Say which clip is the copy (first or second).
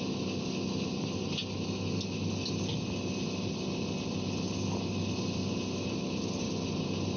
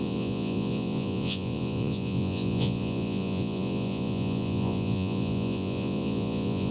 second